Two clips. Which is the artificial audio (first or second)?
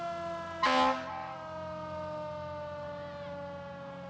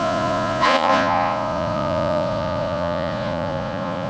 second